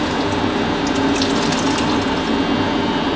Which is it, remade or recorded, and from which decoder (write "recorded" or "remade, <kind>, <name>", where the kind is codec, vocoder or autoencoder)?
recorded